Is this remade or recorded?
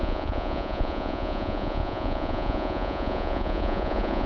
remade